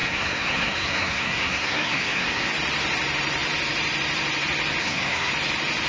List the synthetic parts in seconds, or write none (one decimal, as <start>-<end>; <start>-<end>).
0.0-2.5; 4.8-5.3